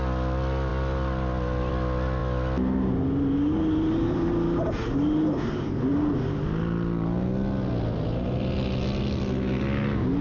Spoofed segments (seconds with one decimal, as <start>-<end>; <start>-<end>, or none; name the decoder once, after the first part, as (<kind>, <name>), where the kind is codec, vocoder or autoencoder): none